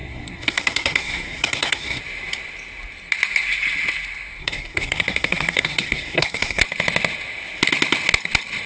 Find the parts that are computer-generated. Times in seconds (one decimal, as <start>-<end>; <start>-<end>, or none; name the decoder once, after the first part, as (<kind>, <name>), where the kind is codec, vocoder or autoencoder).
0.0-2.0 (codec, SNAC); 4.4-6.6

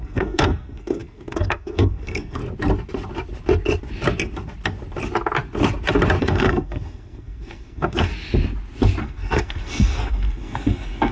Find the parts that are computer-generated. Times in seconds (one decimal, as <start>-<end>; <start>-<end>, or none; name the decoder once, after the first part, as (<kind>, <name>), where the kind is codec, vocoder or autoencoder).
0.0-2.4 (codec, SNAC); 6.2-8.1; 9.0-11.1